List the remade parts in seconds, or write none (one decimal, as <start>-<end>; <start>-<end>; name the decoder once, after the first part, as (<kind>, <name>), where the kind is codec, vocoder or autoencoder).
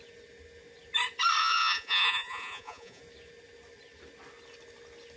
1.4-3.0 (vocoder, Vocos)